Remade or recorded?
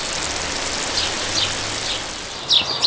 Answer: recorded